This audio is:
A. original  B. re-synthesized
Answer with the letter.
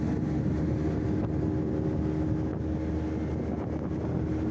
A